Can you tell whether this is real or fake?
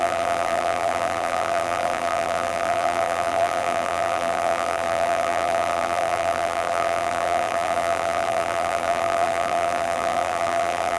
fake